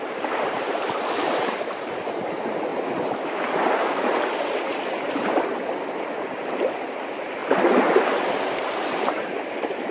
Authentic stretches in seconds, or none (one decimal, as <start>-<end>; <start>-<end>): 2.7-6.0; 7.4-8.3